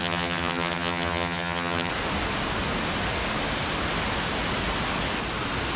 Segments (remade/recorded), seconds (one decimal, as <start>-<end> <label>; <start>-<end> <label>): 0.0-1.9 remade; 1.9-5.8 recorded